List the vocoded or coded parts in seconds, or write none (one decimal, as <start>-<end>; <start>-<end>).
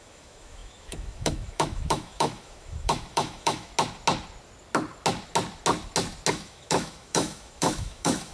0.0-3.7; 6.3-8.3